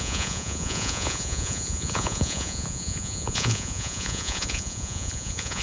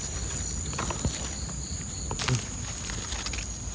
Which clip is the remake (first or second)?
first